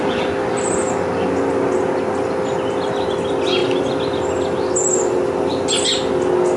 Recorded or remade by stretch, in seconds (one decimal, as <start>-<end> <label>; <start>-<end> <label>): 0.0-6.6 recorded